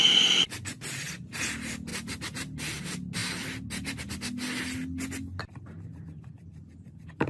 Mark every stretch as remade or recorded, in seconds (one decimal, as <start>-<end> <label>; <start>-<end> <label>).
0.0-7.3 recorded